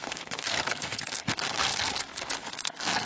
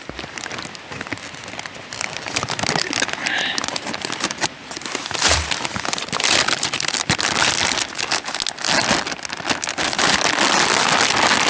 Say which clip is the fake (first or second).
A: first